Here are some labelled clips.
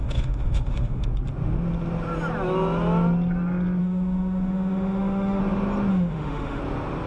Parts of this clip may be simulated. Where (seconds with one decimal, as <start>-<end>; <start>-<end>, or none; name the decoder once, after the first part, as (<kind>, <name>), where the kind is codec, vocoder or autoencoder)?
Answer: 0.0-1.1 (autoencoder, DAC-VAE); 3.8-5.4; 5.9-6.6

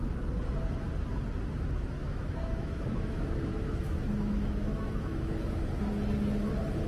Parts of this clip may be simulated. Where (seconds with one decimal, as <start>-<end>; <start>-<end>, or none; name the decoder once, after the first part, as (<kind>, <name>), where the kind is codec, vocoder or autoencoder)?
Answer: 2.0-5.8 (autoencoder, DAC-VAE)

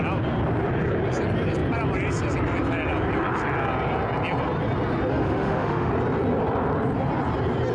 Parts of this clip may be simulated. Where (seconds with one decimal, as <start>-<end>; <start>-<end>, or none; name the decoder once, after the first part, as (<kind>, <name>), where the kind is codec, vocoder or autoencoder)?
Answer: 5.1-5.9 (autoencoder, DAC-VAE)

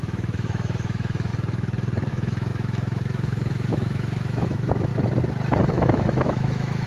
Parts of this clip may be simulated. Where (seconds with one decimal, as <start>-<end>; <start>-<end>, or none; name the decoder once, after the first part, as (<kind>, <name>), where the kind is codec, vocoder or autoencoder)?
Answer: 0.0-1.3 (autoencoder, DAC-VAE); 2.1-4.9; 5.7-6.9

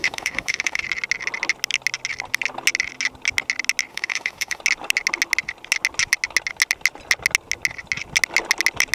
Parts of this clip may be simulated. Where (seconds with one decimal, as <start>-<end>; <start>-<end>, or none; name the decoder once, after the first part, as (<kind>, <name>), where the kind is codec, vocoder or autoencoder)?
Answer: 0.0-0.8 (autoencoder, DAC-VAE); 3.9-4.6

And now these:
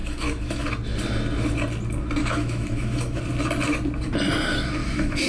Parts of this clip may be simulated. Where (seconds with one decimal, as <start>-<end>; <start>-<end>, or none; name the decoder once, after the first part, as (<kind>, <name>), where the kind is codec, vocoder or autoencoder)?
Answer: 0.0-0.7 (autoencoder, DAC-VAE); 2.2-3.2; 4.8-5.3

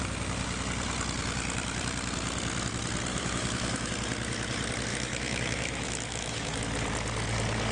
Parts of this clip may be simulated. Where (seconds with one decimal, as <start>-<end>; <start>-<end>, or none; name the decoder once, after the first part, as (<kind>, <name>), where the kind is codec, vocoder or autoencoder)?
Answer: 3.1-3.9 (autoencoder, DAC-VAE); 4.9-6.6